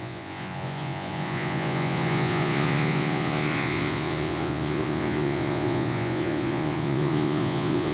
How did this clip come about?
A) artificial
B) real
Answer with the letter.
A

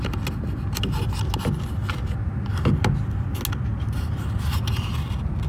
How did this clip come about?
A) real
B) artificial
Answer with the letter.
A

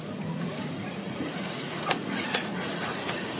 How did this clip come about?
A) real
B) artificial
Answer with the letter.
B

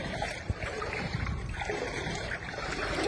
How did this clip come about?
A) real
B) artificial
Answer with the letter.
B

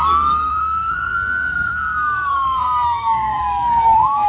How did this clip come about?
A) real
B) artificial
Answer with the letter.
B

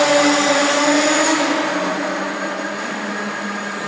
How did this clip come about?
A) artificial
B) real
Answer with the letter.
B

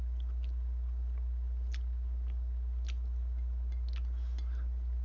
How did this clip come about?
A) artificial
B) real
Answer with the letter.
B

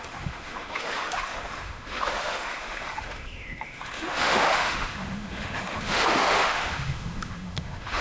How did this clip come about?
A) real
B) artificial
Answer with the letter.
B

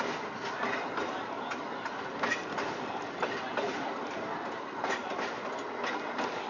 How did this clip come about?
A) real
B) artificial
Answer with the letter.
A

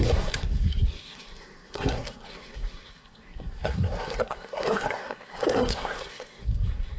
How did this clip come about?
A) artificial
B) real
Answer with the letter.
A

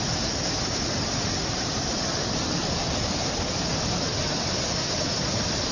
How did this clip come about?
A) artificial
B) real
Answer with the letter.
B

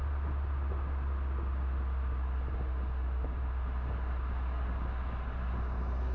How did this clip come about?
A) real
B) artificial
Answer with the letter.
A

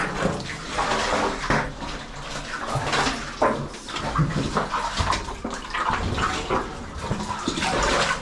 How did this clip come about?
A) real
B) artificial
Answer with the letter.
A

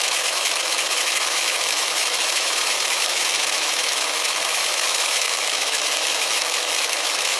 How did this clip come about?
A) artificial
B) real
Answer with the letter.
A